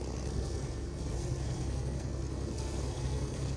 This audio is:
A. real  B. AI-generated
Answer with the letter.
B